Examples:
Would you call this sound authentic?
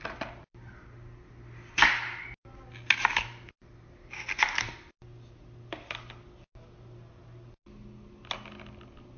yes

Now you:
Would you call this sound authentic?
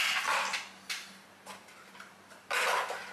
yes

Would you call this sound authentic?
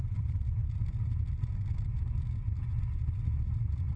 yes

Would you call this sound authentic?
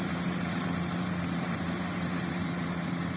no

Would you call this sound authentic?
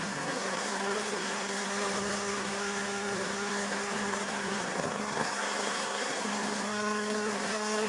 no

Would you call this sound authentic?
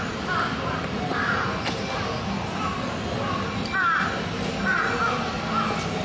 yes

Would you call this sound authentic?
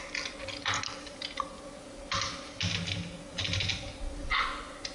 yes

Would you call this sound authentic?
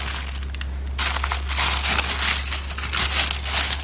yes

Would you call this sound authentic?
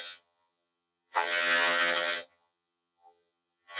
no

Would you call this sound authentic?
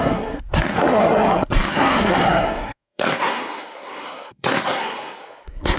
no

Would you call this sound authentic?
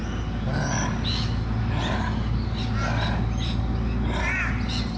yes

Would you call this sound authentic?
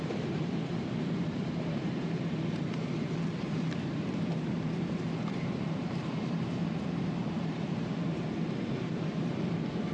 no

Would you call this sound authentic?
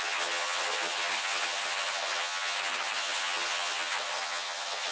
no